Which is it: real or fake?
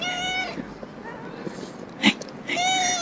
real